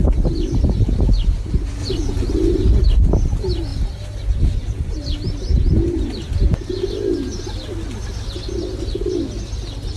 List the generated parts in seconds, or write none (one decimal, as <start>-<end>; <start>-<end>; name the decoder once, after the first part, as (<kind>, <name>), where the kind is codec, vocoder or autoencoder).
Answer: 1.8-3.0 (vocoder, BigVGAN v2); 3.7-6.7